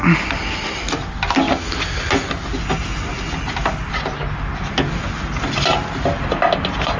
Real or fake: real